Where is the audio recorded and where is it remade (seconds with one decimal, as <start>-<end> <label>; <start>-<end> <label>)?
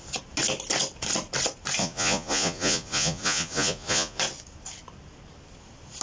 0.0-1.8 recorded; 1.8-4.2 remade; 4.2-6.0 recorded